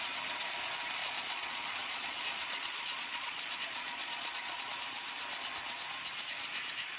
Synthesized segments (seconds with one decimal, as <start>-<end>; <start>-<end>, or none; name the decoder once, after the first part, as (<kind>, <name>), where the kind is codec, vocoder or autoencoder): 1.0-4.6 (vocoder, Vocos)